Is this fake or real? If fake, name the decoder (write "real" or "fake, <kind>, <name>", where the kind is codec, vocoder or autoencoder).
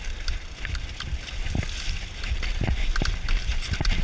real